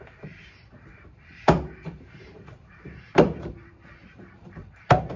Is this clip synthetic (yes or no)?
yes